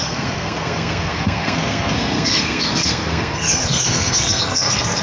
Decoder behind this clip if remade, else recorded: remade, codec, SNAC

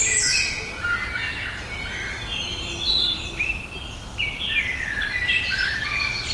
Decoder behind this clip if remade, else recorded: recorded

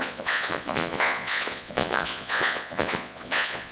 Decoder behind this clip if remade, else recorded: remade, vocoder, Vocos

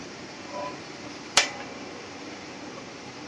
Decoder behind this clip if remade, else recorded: remade, vocoder, BigVGAN v2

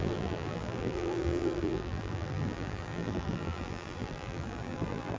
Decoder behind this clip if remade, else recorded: remade, vocoder, BigVGAN v2